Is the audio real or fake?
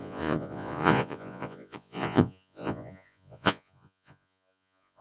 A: fake